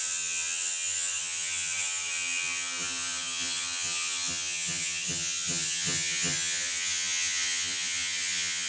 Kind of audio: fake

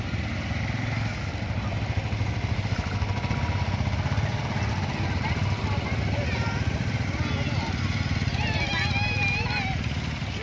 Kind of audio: real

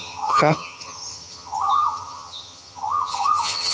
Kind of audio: fake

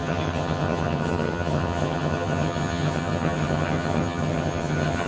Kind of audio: fake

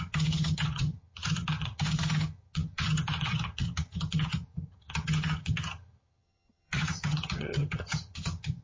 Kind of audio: fake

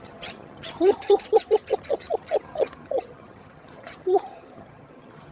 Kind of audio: fake